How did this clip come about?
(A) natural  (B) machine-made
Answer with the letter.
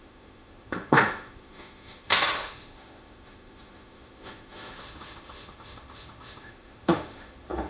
B